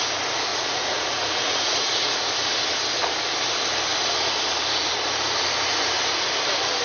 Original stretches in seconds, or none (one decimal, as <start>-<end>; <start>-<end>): 0.0-0.5; 2.3-6.8